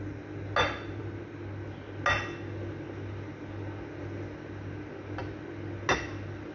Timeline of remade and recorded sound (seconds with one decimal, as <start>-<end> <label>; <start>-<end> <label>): 0.0-6.5 recorded